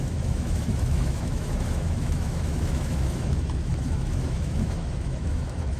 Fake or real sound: fake